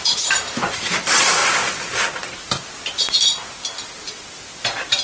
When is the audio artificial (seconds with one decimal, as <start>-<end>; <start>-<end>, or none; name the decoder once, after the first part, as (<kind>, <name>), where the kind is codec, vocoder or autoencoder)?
0.0-1.4 (vocoder, BigVGAN v2); 4.4-5.0